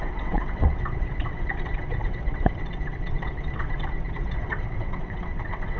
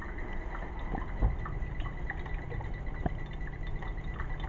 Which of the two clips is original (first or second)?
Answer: second